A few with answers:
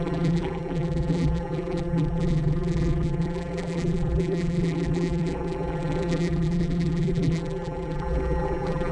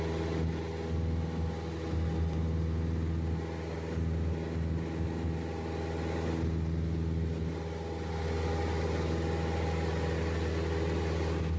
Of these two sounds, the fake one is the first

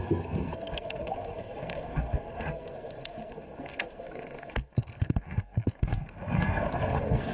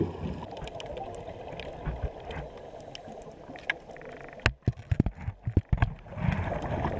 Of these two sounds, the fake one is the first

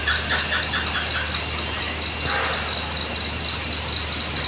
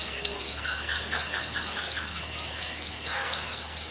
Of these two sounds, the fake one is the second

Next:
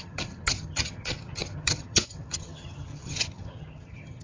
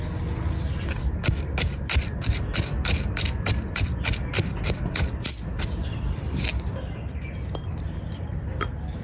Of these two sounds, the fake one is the first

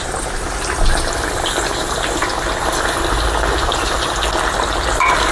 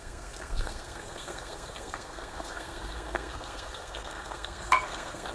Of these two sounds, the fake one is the second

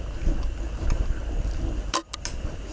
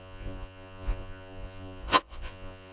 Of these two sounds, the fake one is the second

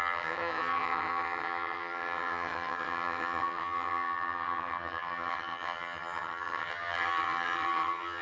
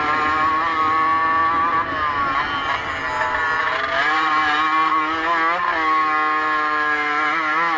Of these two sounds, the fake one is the first